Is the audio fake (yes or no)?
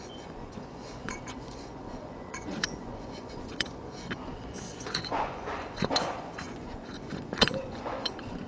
yes